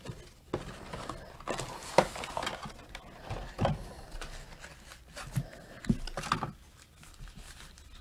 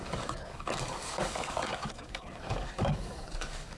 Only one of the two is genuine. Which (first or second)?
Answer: first